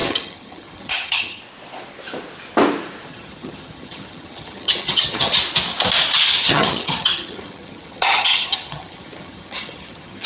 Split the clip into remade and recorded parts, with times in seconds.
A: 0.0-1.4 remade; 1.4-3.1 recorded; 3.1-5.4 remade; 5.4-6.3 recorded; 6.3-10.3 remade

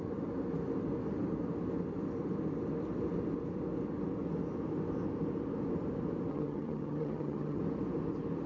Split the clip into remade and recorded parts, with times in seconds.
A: 0.0-6.3 recorded; 6.3-7.6 remade; 7.6-8.5 recorded

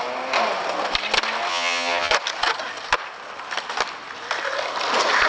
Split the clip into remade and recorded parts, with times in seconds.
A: 0.0-1.5 recorded; 1.5-2.1 remade; 2.1-5.3 recorded

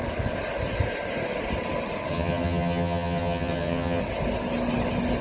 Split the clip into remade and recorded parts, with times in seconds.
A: 0.0-2.1 recorded; 2.1-4.0 remade; 4.0-5.2 recorded

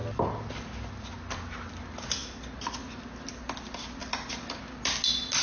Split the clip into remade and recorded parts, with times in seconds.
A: 0.0-5.4 recorded

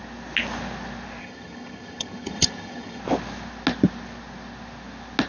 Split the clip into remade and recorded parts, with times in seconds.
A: 0.0-1.2 recorded; 1.2-3.0 remade; 3.0-5.3 recorded